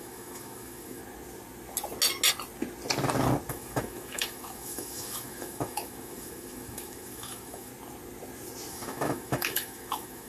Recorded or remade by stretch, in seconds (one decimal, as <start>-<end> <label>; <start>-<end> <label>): 0.0-1.0 remade; 1.0-3.5 recorded; 3.5-7.7 remade; 7.7-8.7 recorded; 8.7-10.3 remade